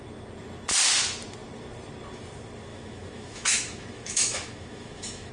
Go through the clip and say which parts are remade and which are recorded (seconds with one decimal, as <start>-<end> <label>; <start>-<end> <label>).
0.0-2.7 recorded; 2.7-5.3 remade